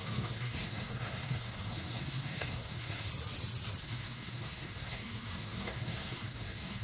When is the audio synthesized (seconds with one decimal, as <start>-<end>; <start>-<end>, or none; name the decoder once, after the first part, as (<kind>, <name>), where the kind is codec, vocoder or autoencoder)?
0.0-3.1 (codec, SNAC); 3.8-6.8